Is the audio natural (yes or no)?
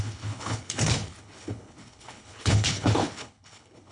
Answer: no